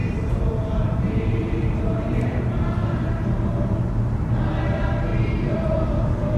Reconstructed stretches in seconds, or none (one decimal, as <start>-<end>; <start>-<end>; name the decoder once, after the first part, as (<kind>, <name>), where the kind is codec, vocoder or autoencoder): 0.0-3.8 (vocoder, BigVGAN v2); 5.1-6.4